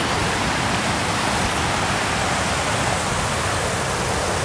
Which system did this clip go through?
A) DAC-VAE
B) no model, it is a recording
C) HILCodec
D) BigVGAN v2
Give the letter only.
B